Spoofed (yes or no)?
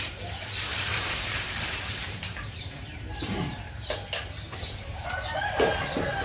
yes